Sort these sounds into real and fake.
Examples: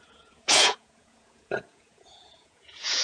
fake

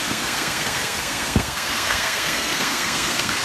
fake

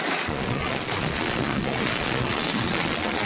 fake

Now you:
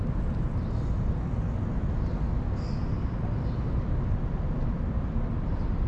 real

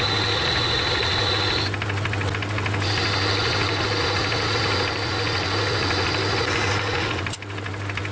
real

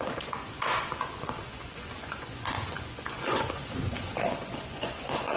fake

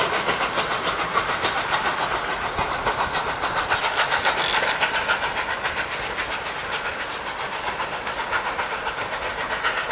real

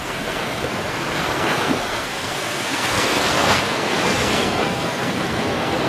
fake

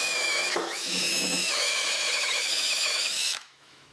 fake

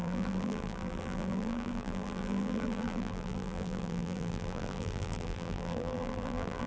fake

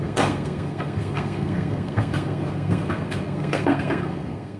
fake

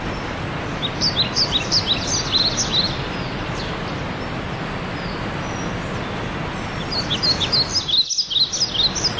real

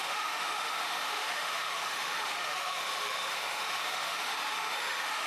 fake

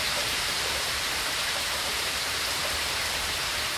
fake